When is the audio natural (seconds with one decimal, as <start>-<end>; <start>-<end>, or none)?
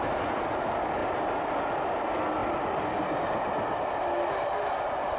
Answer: 0.0-5.2